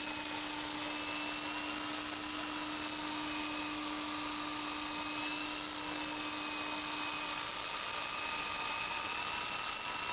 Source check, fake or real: real